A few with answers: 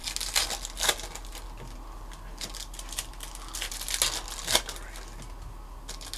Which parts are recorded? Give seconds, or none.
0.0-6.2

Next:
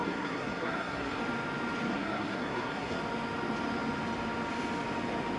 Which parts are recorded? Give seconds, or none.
1.2-1.9; 3.0-5.4